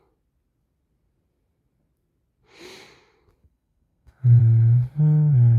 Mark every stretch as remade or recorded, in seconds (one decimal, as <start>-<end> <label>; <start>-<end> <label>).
0.0-3.4 recorded; 3.4-4.4 remade; 4.4-5.6 recorded